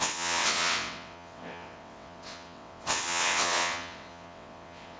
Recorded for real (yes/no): no